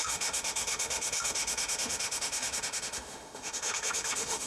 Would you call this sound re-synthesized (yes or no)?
yes